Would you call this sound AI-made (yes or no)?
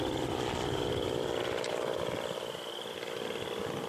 no